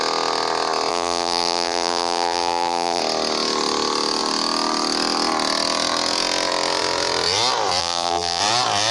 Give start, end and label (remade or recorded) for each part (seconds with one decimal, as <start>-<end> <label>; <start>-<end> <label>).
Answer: 0.0-0.9 recorded; 0.9-3.0 remade; 3.0-7.8 recorded; 7.8-8.4 remade; 8.4-8.9 recorded